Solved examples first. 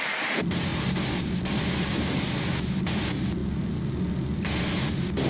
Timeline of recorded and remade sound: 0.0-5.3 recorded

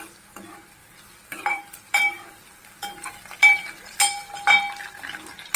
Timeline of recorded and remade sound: 0.0-0.8 recorded; 0.8-4.2 remade; 4.2-5.6 recorded

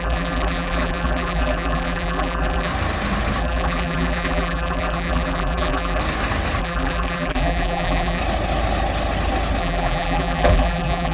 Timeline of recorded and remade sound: 0.0-2.7 remade; 2.7-3.4 recorded; 3.4-6.0 remade; 6.0-6.6 recorded; 6.6-8.2 remade; 8.2-9.6 recorded; 9.6-11.1 remade

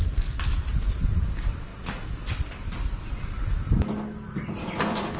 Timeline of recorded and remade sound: 0.0-1.7 remade; 1.7-4.8 recorded; 4.8-5.2 remade

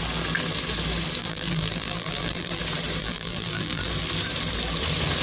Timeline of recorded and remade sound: 0.0-1.2 recorded; 1.2-2.6 remade; 2.6-3.0 recorded; 3.0-3.9 remade; 3.9-5.2 recorded

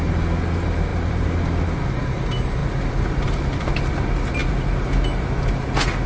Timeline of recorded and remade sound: 0.0-0.9 recorded; 0.9-1.6 remade; 1.6-2.6 recorded; 2.6-3.6 remade; 3.6-4.4 recorded; 4.4-4.9 remade; 4.9-6.1 recorded